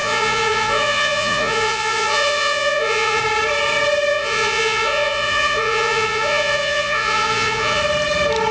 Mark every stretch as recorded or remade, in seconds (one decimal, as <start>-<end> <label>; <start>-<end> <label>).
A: 0.0-3.2 remade; 3.2-4.1 recorded; 4.1-7.8 remade; 7.8-8.5 recorded